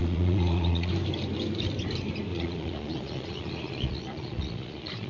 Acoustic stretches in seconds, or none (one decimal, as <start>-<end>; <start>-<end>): 0.9-2.3